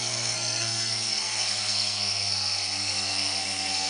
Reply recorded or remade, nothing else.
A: remade